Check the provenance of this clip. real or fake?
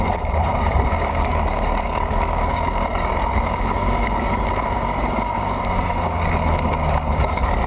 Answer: fake